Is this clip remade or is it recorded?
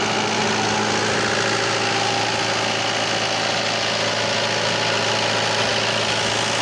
recorded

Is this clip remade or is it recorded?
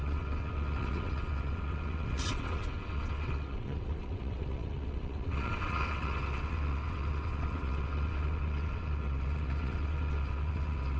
remade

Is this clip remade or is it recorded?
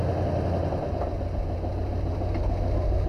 recorded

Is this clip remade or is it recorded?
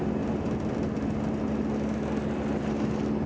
recorded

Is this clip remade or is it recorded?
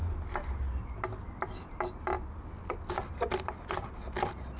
recorded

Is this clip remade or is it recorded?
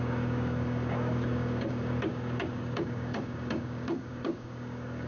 remade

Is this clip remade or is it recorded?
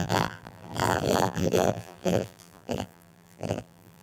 remade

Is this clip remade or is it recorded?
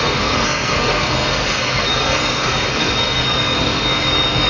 remade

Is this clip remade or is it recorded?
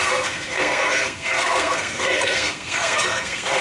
remade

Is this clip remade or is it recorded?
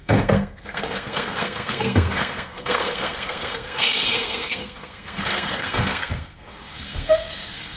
remade